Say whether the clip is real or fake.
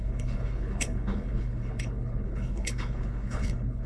fake